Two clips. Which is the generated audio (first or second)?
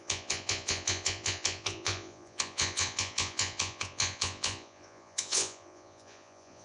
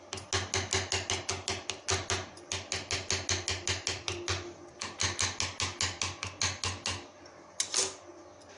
first